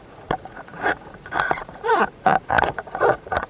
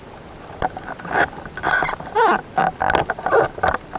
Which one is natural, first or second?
second